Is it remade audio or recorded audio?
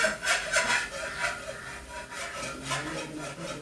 remade